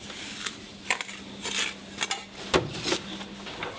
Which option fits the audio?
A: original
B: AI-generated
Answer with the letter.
A